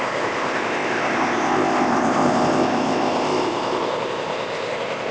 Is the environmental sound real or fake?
fake